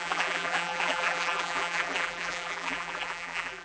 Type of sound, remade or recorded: remade